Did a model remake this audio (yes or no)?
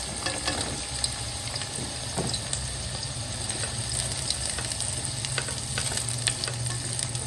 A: no